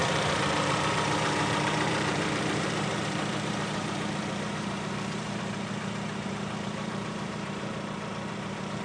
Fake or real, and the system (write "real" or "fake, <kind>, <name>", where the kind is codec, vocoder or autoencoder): fake, vocoder, BigVGAN v2